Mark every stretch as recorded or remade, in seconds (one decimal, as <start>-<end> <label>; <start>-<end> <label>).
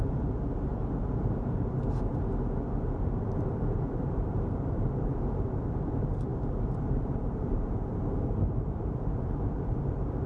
0.0-0.7 remade; 0.7-1.2 recorded; 1.2-2.1 remade; 2.1-2.8 recorded; 2.8-10.3 remade